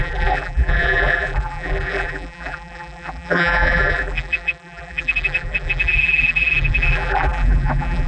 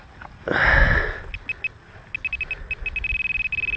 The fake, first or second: first